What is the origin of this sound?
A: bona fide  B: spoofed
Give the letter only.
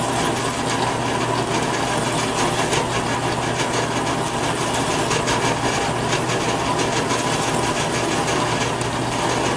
A